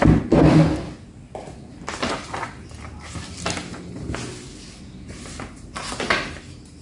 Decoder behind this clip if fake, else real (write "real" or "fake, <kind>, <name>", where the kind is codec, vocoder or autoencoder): real